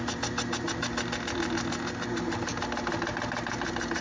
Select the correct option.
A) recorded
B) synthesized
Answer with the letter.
A